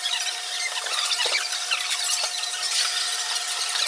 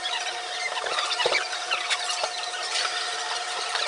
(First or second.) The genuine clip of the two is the first